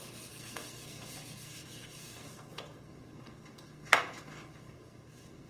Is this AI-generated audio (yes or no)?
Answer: yes